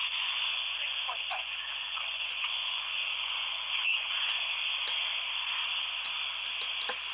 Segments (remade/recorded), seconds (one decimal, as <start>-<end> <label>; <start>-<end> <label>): 0.0-4.3 remade; 4.3-7.1 recorded